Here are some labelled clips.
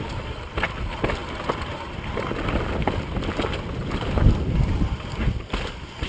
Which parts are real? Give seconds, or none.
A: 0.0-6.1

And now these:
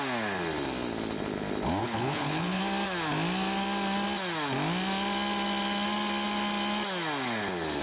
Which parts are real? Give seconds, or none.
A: 0.0-1.8; 2.6-7.8

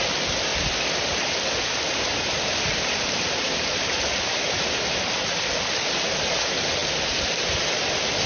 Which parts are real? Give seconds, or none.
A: 0.0-8.3

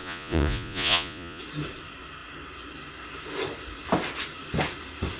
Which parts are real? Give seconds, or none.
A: 1.4-5.2

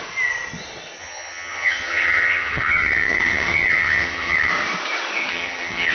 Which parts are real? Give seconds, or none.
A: 0.0-1.0; 4.5-5.3

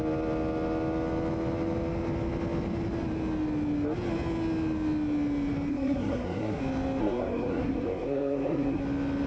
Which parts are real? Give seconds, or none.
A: 0.0-5.7; 6.6-7.0; 8.8-9.3

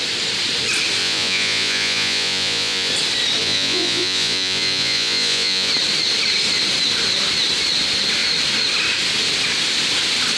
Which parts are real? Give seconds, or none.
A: 0.0-1.0; 2.9-3.4; 5.7-10.4